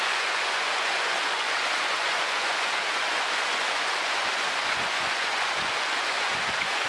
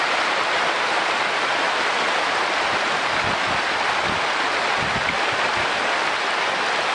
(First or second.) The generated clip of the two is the first